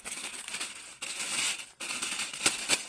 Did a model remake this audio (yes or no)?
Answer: no